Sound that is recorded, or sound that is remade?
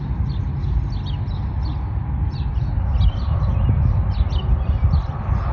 recorded